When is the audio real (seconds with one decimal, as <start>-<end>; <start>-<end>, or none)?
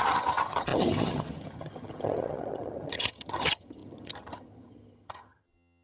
none